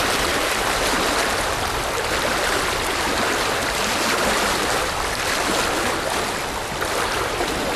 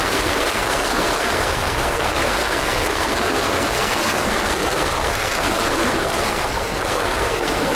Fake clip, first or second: second